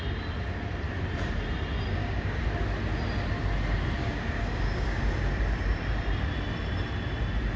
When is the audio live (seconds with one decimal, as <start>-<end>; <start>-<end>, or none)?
0.0-1.9; 2.4-4.0; 5.0-7.6